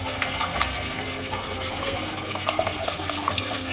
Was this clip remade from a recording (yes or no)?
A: yes